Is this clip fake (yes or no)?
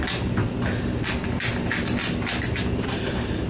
no